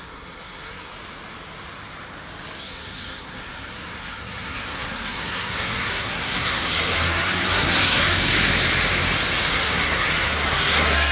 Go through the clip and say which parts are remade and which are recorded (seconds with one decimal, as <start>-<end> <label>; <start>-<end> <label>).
0.0-0.9 remade; 0.9-2.6 recorded; 2.6-8.3 remade; 8.3-9.5 recorded; 9.5-11.1 remade